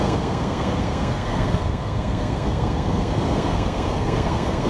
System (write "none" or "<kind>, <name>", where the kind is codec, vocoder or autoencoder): codec, SNAC